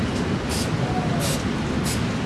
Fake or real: real